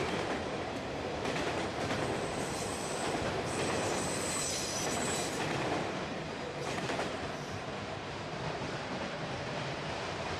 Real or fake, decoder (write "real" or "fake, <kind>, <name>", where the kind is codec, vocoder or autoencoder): fake, vocoder, BigVGAN v2